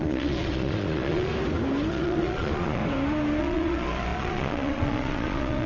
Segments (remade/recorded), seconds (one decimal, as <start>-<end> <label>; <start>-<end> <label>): 0.0-1.3 remade; 1.3-1.9 recorded; 1.9-2.8 remade; 2.8-3.4 recorded; 3.4-5.7 remade